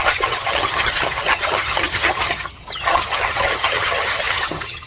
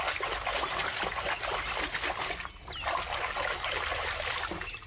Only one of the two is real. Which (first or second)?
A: second